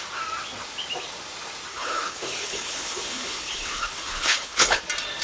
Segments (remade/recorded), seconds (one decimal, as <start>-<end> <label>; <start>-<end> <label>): 0.0-1.7 recorded; 1.7-4.8 remade; 4.8-5.2 recorded